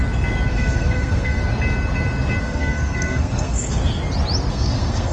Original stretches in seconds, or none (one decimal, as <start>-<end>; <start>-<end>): 0.0-0.5; 1.4-2.4; 3.8-4.5